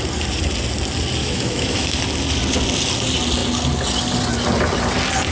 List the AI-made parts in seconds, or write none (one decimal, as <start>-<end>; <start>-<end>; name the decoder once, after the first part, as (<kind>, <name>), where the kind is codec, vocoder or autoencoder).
1.2-2.0 (autoencoder, DAC-VAE)